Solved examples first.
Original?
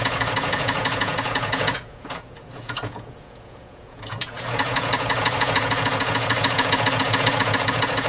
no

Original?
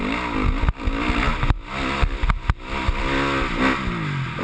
yes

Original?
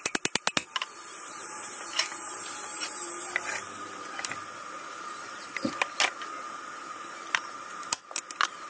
yes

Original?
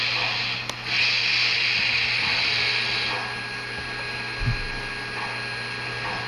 yes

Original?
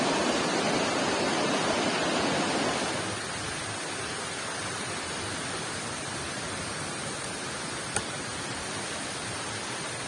yes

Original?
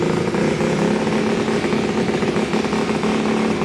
yes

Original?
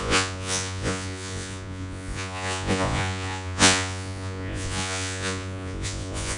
no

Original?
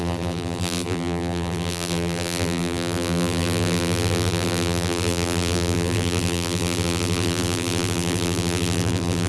no